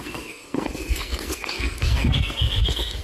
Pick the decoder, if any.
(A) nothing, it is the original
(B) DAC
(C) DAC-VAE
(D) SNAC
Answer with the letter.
D